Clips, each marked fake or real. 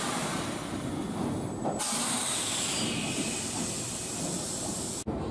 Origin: real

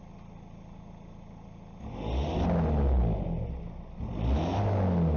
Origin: real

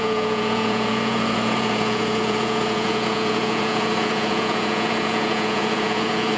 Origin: fake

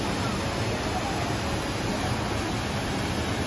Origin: real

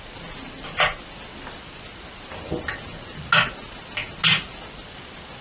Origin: real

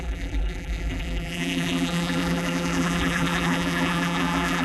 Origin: fake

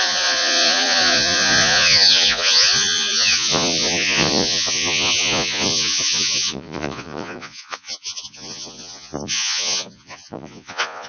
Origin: fake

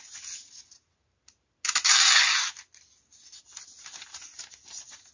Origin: real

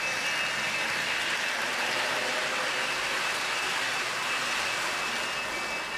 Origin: real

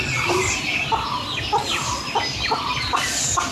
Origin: real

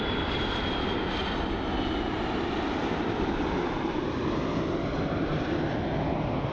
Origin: real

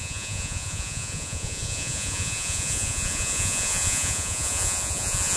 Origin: fake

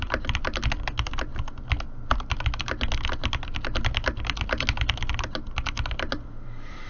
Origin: real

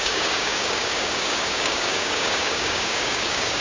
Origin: fake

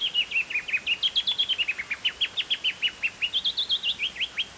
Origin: real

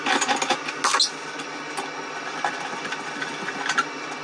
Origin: real